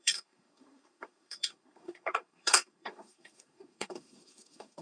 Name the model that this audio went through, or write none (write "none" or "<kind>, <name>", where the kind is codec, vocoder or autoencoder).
codec, SNAC